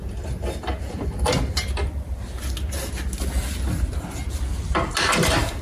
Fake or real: real